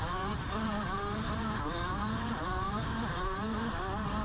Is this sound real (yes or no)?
no